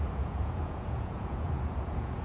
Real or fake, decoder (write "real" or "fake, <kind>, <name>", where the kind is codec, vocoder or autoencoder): fake, vocoder, Vocos